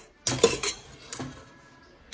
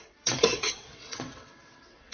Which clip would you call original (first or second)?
first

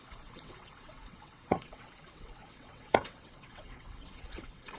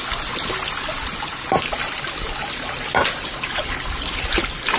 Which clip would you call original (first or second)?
second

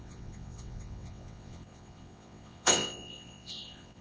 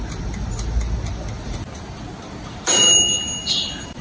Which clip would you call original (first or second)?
second